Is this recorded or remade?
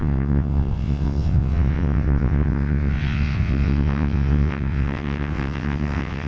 remade